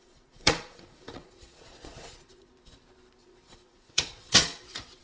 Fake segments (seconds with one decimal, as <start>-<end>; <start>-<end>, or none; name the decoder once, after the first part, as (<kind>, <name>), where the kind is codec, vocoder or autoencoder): 0.0-2.5 (vocoder, Vocos); 3.2-5.0